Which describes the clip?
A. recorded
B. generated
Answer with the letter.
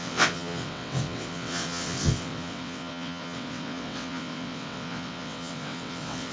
B